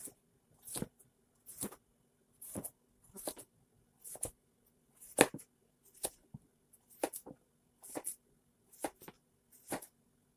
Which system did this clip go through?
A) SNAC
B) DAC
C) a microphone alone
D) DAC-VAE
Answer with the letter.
C